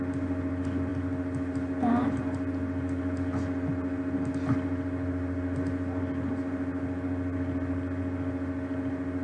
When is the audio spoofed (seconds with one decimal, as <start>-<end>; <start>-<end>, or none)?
none